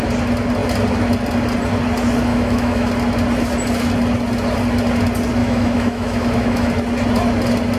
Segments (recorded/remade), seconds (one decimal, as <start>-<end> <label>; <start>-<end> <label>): 0.0-2.3 recorded; 2.3-2.9 remade; 2.9-5.4 recorded; 5.4-6.7 remade; 6.7-7.8 recorded